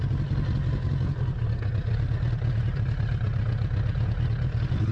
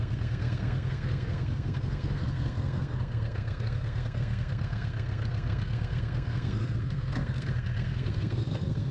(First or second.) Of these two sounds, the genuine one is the first